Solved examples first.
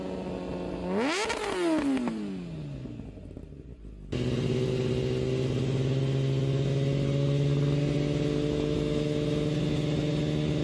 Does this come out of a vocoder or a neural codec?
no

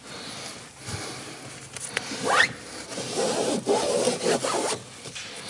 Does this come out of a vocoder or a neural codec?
no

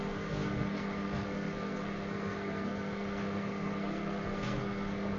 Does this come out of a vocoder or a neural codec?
yes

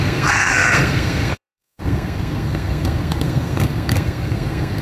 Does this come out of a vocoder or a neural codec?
yes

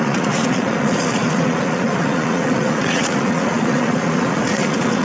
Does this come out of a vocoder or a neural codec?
yes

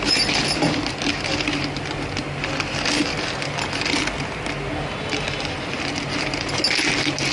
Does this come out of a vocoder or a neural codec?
no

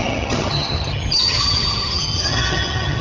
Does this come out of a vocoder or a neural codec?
yes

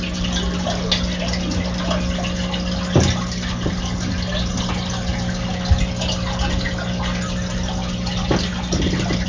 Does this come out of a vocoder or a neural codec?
no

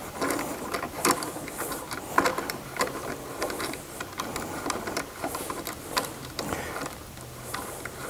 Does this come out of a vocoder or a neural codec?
no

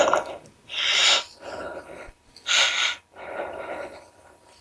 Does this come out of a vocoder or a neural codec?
no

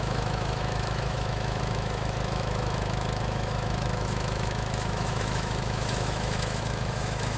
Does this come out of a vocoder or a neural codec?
yes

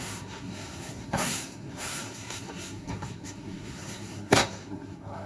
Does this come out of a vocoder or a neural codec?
yes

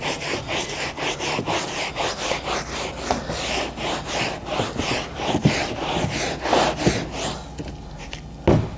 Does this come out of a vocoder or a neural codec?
no